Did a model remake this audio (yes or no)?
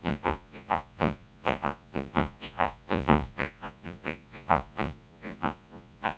yes